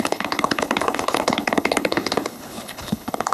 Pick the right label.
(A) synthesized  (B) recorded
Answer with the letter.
A